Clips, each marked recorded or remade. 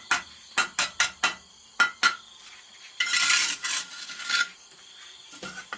recorded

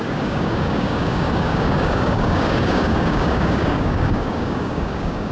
remade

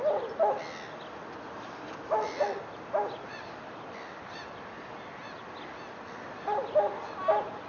recorded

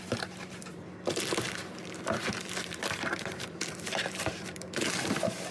remade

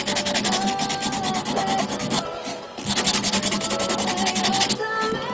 recorded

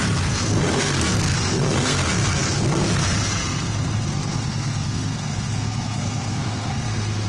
remade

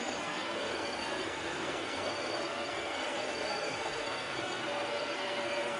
remade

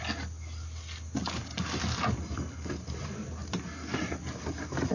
recorded